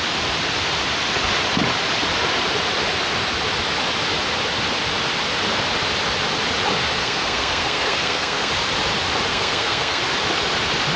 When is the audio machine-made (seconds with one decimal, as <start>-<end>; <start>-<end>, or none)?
7.0-8.5; 9.3-10.0